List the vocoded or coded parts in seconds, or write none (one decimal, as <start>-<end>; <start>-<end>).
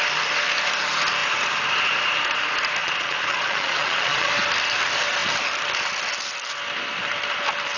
2.8-4.3